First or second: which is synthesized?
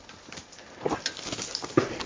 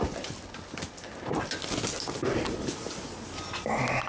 first